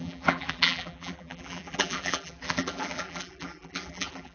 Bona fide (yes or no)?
no